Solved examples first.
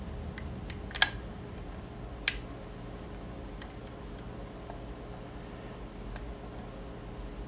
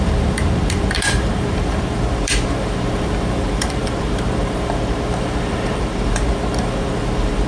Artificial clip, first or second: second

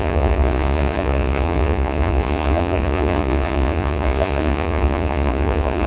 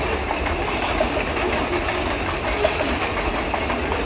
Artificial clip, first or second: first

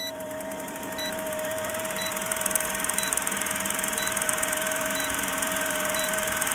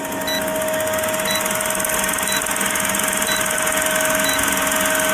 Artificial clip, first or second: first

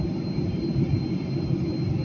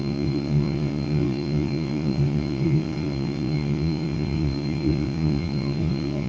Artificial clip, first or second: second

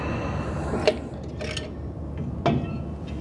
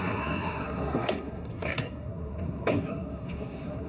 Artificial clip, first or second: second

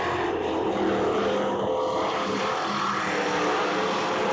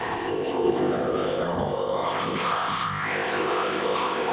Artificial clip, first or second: second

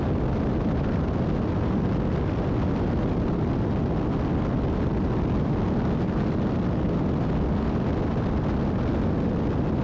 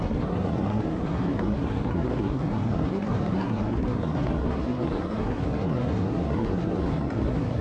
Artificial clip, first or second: second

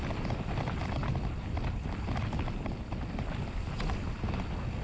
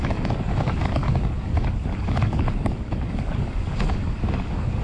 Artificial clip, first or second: second